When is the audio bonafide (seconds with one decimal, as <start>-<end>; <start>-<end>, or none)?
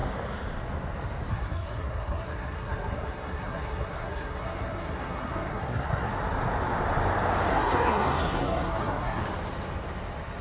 0.0-1.3; 6.1-7.5; 9.2-10.4